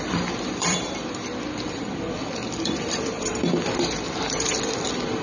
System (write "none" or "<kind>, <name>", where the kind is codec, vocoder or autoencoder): vocoder, BigVGAN v2